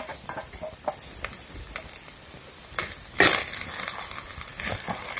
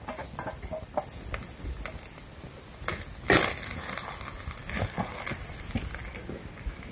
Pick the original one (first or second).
second